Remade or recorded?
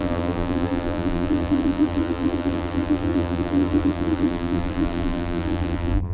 remade